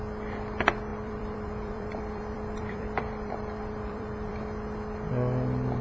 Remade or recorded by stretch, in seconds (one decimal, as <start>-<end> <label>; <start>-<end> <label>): 0.0-0.9 recorded; 0.9-4.4 remade; 4.4-5.8 recorded